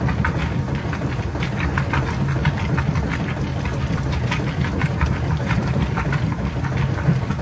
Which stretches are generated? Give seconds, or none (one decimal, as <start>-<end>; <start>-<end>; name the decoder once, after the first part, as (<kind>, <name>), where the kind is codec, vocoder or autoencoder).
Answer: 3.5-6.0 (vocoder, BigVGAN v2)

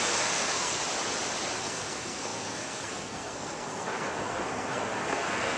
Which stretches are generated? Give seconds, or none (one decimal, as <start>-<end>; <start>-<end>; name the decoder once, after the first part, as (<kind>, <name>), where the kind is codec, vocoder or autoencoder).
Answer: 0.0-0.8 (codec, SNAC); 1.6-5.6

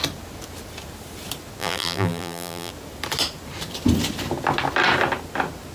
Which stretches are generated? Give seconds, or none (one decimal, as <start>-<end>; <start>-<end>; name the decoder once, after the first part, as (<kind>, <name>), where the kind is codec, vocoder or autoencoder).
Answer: 1.6-2.7 (vocoder, BigVGAN v2)